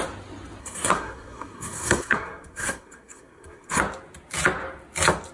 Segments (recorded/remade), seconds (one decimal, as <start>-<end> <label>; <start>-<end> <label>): 0.0-0.6 recorded; 0.6-3.8 remade; 3.8-5.3 recorded